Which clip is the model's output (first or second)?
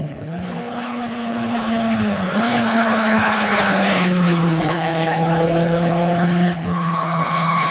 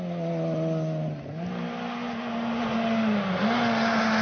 first